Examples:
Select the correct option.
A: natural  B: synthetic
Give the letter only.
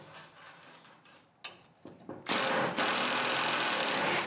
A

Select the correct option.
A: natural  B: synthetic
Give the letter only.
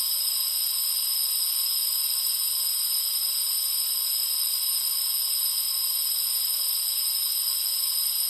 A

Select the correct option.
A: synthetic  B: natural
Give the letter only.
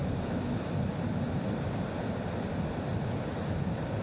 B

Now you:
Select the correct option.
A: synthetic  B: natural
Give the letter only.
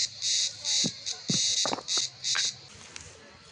B